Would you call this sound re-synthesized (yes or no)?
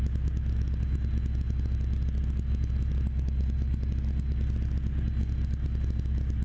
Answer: no